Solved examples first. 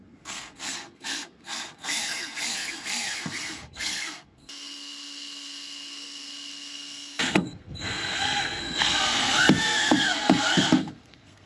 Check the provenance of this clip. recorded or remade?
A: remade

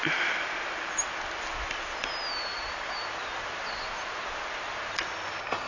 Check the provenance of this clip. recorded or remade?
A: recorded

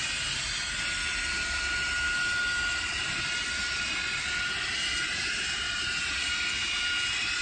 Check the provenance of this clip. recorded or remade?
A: recorded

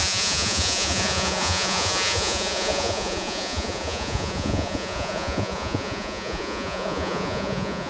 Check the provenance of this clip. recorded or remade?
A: remade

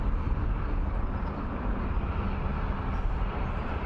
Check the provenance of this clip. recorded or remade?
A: recorded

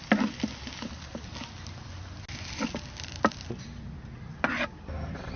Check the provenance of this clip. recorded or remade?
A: recorded